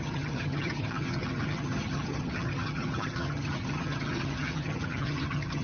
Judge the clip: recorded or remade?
remade